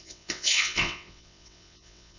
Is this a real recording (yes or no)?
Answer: no